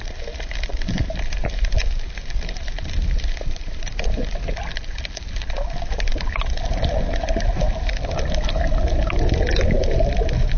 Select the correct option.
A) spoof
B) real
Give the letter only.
A